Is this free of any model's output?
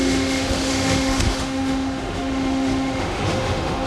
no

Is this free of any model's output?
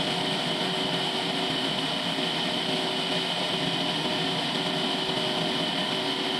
yes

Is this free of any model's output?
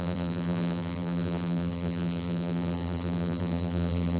no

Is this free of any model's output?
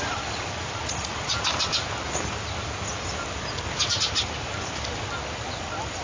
yes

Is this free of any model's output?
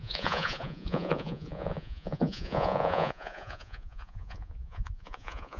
no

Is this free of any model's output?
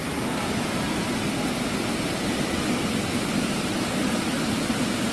yes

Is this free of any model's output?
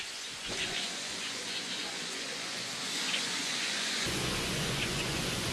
no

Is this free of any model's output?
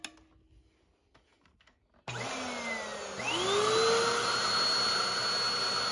yes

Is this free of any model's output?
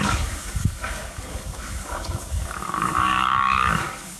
no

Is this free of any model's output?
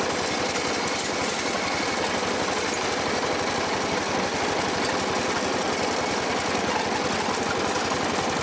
yes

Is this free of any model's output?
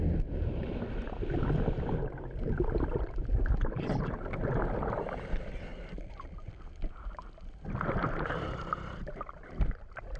yes